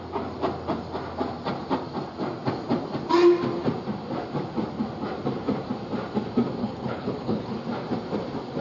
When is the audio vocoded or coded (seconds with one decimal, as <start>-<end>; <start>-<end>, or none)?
6.6-7.6